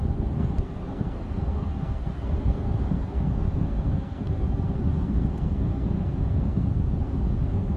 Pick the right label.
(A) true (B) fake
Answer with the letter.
B